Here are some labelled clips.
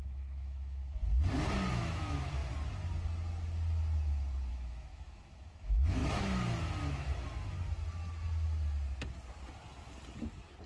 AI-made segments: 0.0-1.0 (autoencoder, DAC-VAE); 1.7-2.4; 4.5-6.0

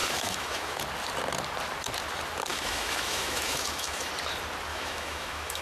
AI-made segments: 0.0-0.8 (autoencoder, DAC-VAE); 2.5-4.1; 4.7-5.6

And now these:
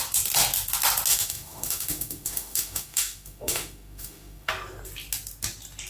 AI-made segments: 1.1-4.5 (autoencoder, DAC-VAE)